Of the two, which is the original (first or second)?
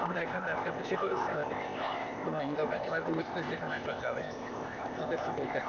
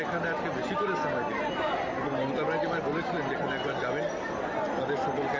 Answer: second